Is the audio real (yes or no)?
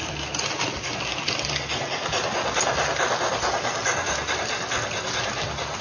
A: yes